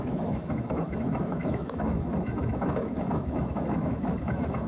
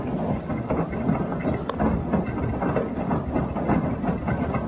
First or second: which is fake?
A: first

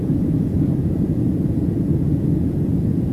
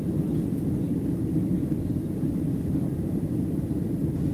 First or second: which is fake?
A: first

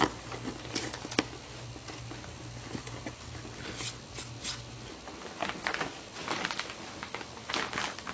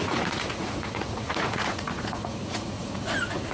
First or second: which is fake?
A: second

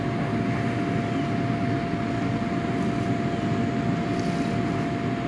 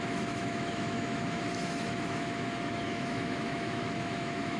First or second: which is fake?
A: second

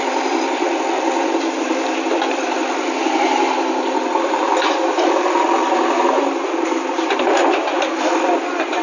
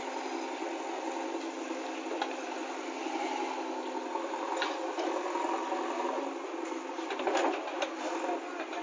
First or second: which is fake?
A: first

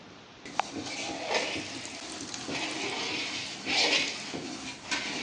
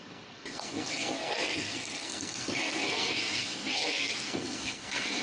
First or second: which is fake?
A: second